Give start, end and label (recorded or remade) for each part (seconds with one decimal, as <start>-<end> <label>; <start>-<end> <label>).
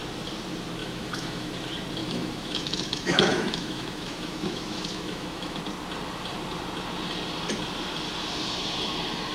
0.0-0.8 recorded; 0.8-1.5 remade; 1.5-2.0 recorded; 2.0-5.6 remade; 5.6-9.3 recorded